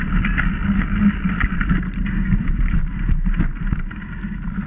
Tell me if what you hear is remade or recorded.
recorded